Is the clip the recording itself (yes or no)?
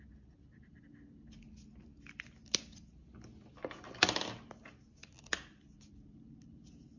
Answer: yes